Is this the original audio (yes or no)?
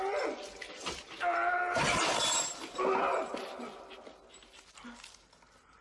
yes